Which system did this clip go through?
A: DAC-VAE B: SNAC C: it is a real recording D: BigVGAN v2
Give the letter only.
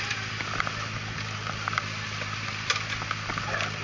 C